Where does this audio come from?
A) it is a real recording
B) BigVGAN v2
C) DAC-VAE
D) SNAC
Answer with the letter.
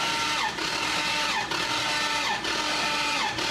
A